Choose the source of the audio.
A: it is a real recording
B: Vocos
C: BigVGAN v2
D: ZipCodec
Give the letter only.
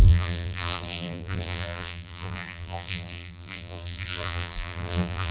C